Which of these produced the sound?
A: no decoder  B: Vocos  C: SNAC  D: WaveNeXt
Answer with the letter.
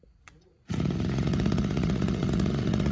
B